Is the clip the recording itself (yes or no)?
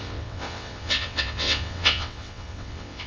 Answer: no